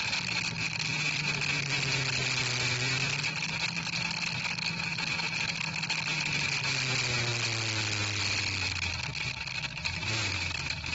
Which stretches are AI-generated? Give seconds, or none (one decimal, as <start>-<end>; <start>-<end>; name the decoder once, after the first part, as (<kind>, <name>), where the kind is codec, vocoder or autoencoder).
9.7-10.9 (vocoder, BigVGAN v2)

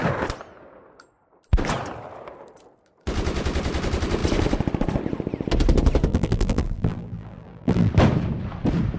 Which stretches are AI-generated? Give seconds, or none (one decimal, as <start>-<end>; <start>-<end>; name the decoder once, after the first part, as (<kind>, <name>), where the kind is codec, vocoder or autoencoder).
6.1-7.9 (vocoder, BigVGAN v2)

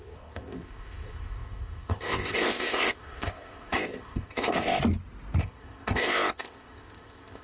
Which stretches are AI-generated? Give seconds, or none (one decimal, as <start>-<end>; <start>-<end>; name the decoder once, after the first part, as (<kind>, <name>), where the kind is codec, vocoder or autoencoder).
0.0-4.8 (codec, ZipCodec); 5.4-7.4